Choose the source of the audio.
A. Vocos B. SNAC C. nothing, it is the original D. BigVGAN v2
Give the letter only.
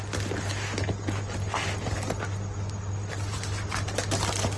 C